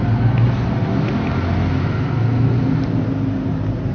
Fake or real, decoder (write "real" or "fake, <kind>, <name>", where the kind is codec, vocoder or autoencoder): real